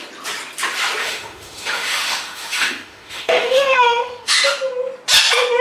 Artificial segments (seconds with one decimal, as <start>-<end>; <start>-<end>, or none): 1.0-4.4